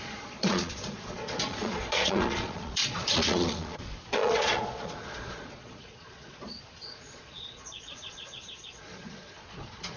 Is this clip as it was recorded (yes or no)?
no